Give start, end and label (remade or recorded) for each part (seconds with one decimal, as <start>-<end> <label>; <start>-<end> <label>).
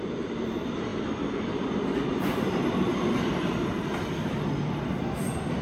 0.0-5.6 recorded